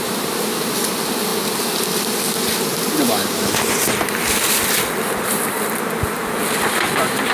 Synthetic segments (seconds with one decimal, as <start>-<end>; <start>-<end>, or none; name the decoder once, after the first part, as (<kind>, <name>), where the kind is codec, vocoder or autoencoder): 0.0-1.3 (vocoder, BigVGAN v2); 1.8-7.3